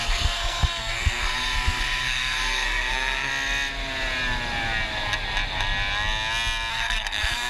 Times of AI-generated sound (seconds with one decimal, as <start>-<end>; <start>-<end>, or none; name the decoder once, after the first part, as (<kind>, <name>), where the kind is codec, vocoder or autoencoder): 0.0-3.3 (codec, SNAC); 6.7-7.5